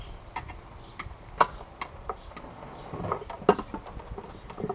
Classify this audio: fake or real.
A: real